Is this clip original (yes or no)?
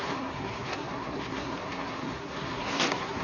no